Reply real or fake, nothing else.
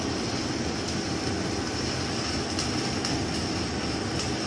real